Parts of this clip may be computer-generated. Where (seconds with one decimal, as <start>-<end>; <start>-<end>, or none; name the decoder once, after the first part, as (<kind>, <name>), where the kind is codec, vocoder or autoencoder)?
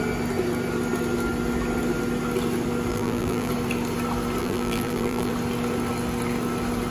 2.9-3.5 (vocoder, BigVGAN v2); 4.4-5.3